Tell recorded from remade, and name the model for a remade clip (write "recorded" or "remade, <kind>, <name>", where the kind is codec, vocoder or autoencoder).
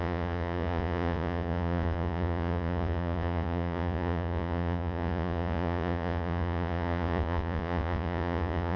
remade, vocoder, Vocos